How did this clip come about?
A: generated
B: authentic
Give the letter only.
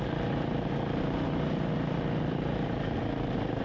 B